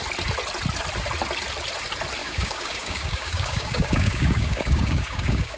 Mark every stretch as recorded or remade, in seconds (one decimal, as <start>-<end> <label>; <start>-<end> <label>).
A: 0.0-2.2 recorded; 2.2-5.6 remade